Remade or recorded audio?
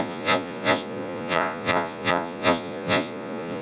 remade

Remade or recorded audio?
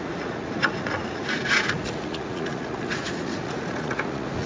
remade